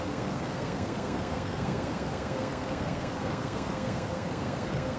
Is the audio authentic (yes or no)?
no